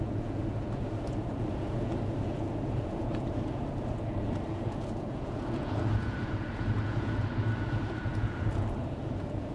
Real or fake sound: fake